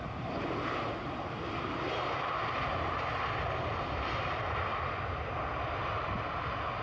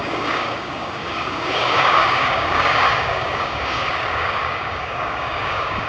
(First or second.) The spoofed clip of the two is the second